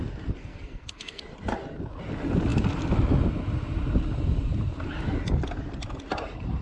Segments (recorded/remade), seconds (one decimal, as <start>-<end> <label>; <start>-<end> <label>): 0.0-0.4 recorded; 0.4-1.2 remade; 1.2-6.6 recorded